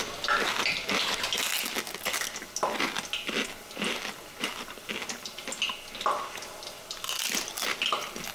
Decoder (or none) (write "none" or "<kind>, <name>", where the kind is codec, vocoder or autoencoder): none